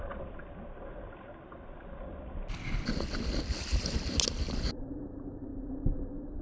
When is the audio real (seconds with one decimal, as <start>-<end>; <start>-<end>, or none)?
0.9-4.7; 5.5-6.4